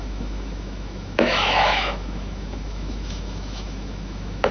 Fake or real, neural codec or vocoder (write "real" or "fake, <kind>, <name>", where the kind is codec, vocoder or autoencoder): fake, autoencoder, DAC-VAE